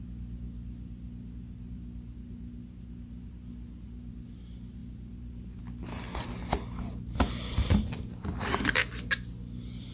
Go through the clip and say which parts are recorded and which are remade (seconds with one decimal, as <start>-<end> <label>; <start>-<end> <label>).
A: 0.0-9.9 recorded